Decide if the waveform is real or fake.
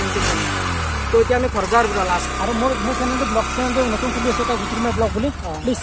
real